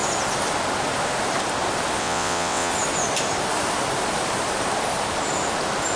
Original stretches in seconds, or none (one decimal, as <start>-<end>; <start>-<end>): 0.0-2.0; 2.7-6.0